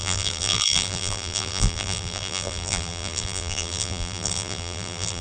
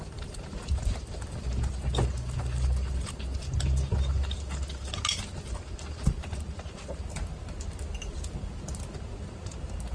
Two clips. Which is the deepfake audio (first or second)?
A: first